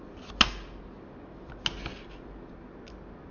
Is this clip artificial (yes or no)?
no